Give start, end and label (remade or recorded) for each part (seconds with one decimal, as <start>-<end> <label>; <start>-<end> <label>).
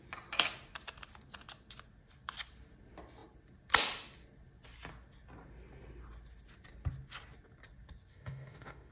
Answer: 0.0-8.1 recorded; 8.1-8.9 remade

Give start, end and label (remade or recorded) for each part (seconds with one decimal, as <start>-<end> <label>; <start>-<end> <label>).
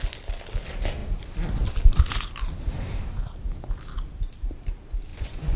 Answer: 0.0-5.1 recorded; 5.1-5.6 remade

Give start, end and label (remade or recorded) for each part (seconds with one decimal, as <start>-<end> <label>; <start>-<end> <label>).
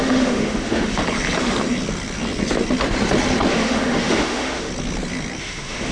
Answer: 0.0-1.0 remade; 1.0-3.5 recorded; 3.5-4.7 remade; 4.7-5.4 recorded; 5.4-5.9 remade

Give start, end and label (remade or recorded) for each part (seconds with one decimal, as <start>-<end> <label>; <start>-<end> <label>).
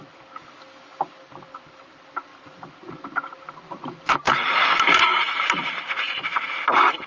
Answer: 0.0-2.3 recorded; 2.3-6.6 remade; 6.6-7.1 recorded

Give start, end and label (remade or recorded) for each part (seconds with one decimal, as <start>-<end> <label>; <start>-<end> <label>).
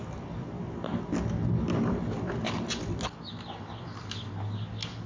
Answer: 0.0-5.1 recorded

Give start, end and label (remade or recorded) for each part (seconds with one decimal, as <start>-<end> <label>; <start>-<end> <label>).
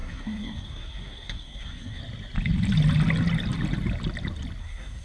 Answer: 0.0-2.0 remade; 2.0-4.6 recorded; 4.6-5.0 remade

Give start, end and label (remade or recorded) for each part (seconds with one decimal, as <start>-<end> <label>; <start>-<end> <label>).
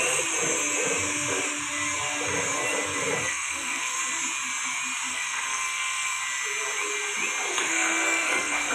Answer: 0.0-3.2 recorded; 3.2-4.0 remade; 4.0-5.1 recorded; 5.1-6.2 remade; 6.2-7.5 recorded; 7.5-8.7 remade